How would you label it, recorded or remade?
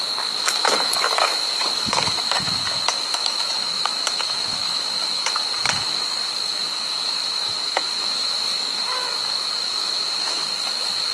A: remade